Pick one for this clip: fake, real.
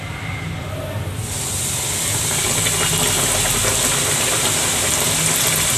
real